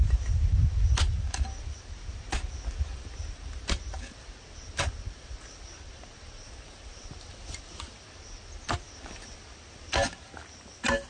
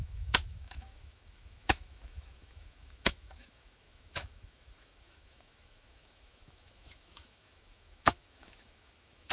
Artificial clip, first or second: second